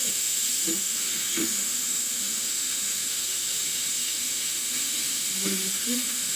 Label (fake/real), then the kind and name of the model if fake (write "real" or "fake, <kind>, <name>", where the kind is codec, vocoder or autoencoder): fake, autoencoder, DAC-VAE